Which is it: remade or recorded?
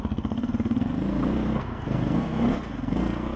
remade